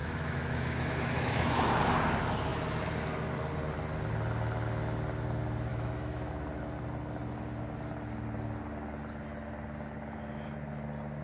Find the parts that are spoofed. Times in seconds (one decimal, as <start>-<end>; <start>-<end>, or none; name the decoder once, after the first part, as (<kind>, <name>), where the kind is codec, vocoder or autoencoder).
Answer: 0.0-1.8 (autoencoder, DAC-VAE); 5.7-6.3